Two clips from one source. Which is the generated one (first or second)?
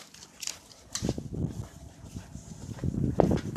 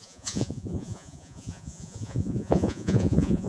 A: second